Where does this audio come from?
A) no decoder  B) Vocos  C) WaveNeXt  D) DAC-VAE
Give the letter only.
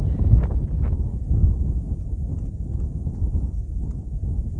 A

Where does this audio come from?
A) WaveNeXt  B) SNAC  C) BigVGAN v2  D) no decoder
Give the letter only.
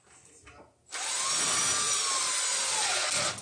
D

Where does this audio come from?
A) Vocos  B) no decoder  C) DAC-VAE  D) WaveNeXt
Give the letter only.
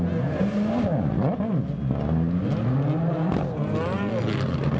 B